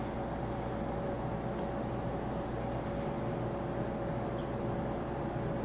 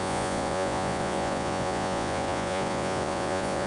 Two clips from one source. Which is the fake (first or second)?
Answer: second